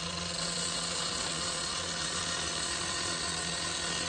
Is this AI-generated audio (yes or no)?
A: yes